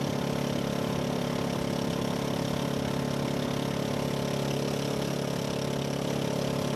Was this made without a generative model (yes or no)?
yes